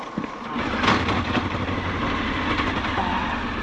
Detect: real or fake real